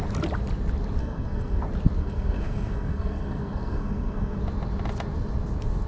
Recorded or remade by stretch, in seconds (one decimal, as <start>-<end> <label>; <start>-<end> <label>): 0.0-1.0 recorded; 1.0-1.6 remade; 1.6-2.0 recorded; 2.0-4.4 remade; 4.4-5.9 recorded